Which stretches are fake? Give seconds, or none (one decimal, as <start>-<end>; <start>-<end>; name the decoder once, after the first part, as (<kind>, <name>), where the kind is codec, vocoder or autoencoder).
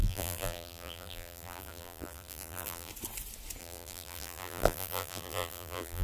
0.0-2.9 (vocoder, BigVGAN v2); 3.6-6.0